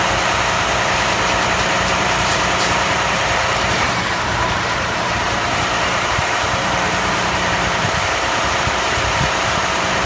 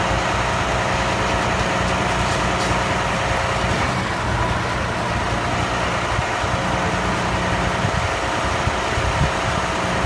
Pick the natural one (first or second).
second